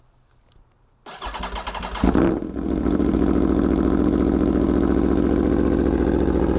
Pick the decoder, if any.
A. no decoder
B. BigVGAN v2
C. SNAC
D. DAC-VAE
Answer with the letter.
A